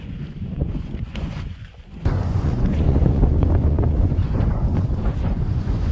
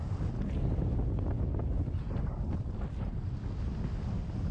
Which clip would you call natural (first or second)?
second